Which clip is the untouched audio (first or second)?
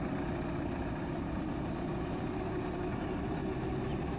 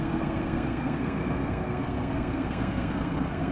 first